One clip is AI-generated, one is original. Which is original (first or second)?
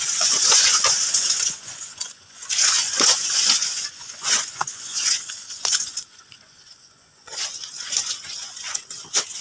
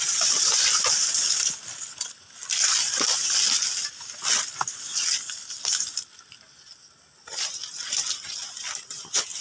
second